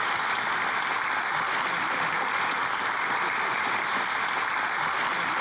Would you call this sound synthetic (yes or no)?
no